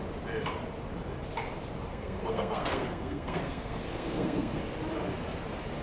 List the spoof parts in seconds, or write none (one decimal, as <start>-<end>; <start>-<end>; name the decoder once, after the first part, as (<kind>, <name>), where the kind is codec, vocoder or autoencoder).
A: 1.9-4.6 (codec, SNAC)